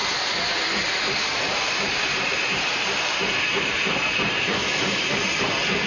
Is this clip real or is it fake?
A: fake